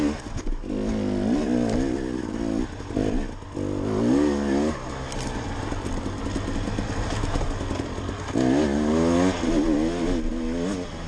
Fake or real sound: real